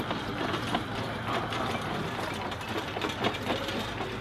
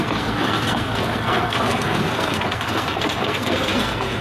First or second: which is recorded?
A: first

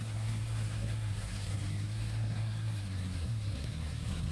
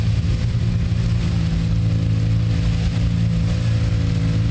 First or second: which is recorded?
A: second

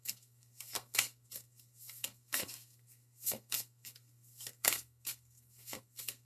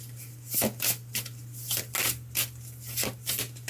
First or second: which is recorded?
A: second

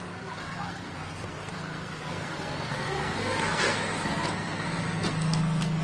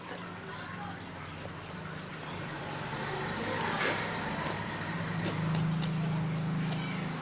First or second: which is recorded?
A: second